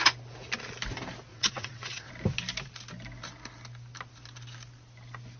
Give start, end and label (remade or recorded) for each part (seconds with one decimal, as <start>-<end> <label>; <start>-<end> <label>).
0.0-1.3 recorded; 1.3-2.1 remade; 2.1-5.4 recorded